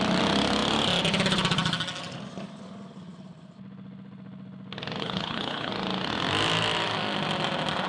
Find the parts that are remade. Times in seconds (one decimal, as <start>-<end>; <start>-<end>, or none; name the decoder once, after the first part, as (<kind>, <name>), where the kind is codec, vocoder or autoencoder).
5.0-5.7 (codec, HILCodec)